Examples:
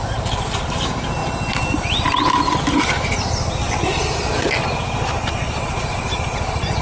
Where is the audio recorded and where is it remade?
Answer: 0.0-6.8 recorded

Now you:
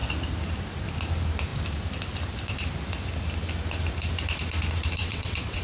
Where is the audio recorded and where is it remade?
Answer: 0.0-5.0 recorded; 5.0-5.6 remade

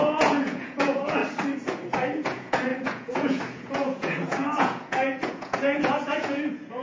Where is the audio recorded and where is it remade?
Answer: 0.0-1.2 remade; 1.2-1.9 recorded; 1.9-6.8 remade